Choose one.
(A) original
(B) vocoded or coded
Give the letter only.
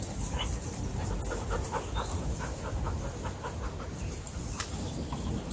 A